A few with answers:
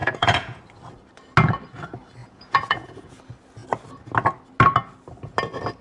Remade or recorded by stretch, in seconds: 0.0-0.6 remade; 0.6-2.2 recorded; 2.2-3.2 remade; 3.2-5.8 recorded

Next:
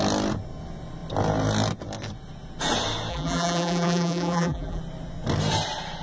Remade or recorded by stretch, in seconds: 0.0-3.1 recorded; 3.1-4.8 remade; 4.8-6.0 recorded

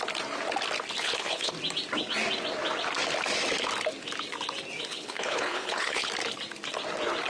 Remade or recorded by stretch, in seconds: 0.0-1.0 recorded; 1.0-1.5 remade; 1.5-4.9 recorded; 4.9-6.1 remade; 6.1-7.3 recorded

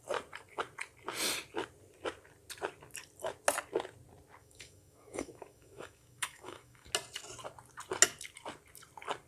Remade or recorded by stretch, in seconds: 0.0-4.4 recorded; 4.4-6.9 remade; 6.9-9.3 recorded

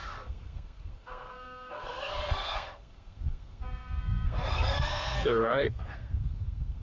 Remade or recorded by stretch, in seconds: 0.0-6.8 remade

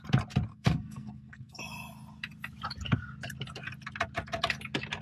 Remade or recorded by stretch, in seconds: 0.0-0.5 recorded; 0.5-1.6 remade; 1.6-5.0 recorded

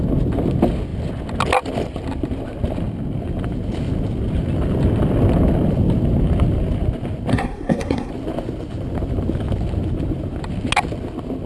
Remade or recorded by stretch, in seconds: 0.0-7.3 recorded; 7.3-8.1 remade; 8.1-11.5 recorded

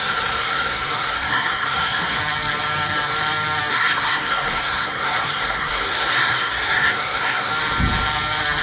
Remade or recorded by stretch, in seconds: 0.0-2.2 remade; 2.2-3.7 recorded; 3.7-7.5 remade; 7.5-8.6 recorded